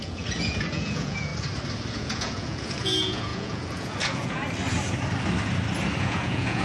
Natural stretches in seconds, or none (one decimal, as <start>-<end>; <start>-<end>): 1.3-1.9; 4.4-6.0

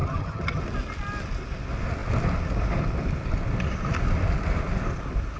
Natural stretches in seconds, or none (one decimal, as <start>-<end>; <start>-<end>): 0.6-5.4

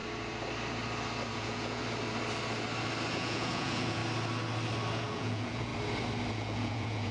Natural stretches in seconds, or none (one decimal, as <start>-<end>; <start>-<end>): 0.0-1.3; 1.8-3.1; 4.0-4.9; 5.7-6.3

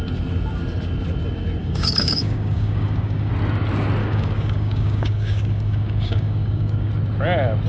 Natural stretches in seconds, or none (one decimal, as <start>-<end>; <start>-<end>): 0.0-1.6; 3.3-4.0; 6.9-7.7

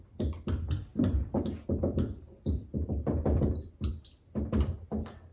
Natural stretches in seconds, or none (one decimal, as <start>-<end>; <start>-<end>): 0.0-5.3

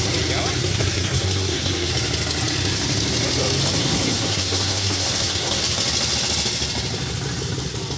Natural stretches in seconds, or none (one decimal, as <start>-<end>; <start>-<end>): 0.0-0.6; 1.9-3.8; 5.6-8.0